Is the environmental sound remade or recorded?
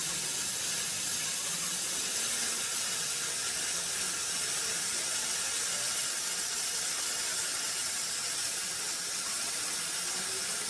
recorded